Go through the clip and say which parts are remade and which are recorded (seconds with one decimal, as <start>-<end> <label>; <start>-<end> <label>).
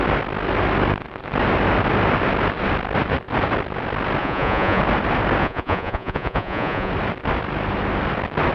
0.0-4.2 recorded; 4.2-4.8 remade; 4.8-5.4 recorded; 5.4-6.9 remade; 6.9-8.5 recorded